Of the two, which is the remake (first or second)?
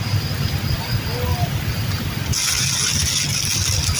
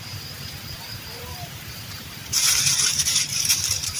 second